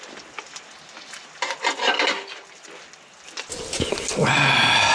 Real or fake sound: real